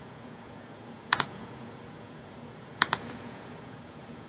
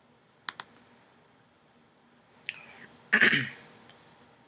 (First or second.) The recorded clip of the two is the second